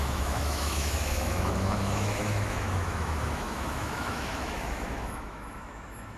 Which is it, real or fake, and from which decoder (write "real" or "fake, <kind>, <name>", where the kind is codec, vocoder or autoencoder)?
fake, autoencoder, DAC-VAE